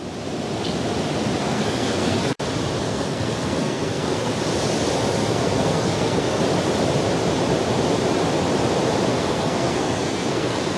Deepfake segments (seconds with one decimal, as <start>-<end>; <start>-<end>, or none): 1.4-2.4; 2.8-4.3; 5.2-6.4; 9.1-10.8